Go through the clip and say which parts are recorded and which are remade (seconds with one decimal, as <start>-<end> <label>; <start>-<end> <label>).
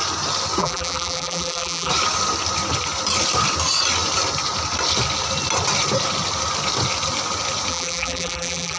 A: 0.0-0.6 recorded; 0.6-1.9 remade; 1.9-7.7 recorded; 7.7-8.8 remade